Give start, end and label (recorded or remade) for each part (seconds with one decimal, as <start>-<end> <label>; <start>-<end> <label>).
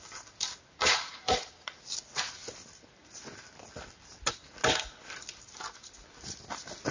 0.0-0.8 recorded; 0.8-1.8 remade; 1.8-6.9 recorded